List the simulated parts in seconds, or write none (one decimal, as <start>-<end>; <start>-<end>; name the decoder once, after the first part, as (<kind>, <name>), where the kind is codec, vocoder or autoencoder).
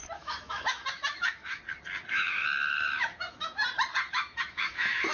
0.0-1.6 (autoencoder, DAC-VAE); 2.1-3.6; 4.1-5.1